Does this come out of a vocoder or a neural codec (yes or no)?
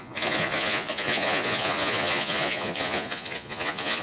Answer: yes